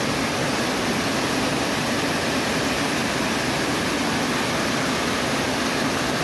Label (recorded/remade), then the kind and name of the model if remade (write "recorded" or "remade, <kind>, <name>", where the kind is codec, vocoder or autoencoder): recorded